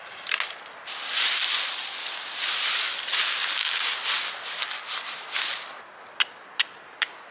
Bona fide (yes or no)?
yes